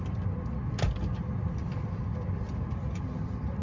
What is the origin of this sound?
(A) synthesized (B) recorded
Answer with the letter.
B